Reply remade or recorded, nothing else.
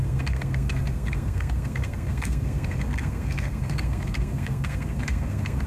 remade